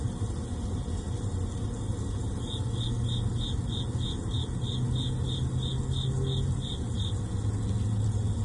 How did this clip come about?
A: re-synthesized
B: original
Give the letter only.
B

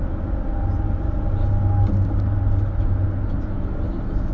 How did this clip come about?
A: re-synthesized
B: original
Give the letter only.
B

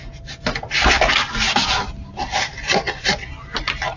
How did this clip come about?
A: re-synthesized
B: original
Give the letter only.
B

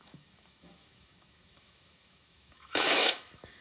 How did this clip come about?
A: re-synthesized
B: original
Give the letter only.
A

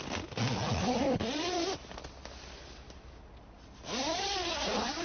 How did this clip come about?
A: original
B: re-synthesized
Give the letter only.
A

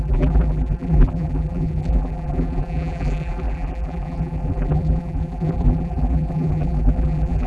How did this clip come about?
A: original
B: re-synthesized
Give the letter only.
B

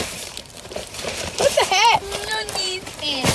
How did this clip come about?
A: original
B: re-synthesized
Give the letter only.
B